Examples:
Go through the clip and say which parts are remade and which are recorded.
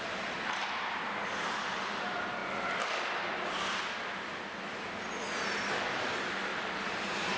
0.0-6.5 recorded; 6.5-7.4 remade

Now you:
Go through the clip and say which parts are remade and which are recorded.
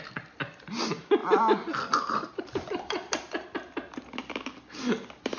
0.0-1.2 recorded; 1.2-4.4 remade; 4.4-5.4 recorded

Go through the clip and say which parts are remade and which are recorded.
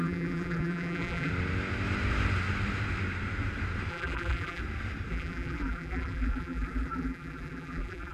0.0-1.3 remade; 1.3-3.9 recorded; 3.9-4.6 remade; 4.6-5.1 recorded; 5.1-8.1 remade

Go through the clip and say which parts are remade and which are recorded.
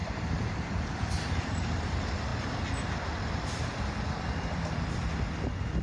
0.0-2.3 remade; 2.3-3.3 recorded; 3.3-5.8 remade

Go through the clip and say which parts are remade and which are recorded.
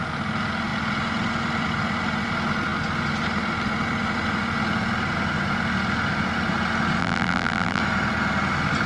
0.0-7.0 recorded; 7.0-7.8 remade; 7.8-8.9 recorded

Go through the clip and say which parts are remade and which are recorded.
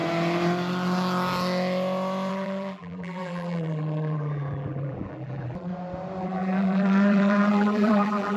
0.0-2.3 recorded; 2.3-5.7 remade; 5.7-6.2 recorded; 6.2-8.4 remade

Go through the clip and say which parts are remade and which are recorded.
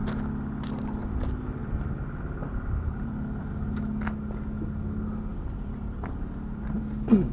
0.0-1.6 recorded; 1.6-3.5 remade; 3.5-5.3 recorded; 5.3-6.1 remade; 6.1-7.3 recorded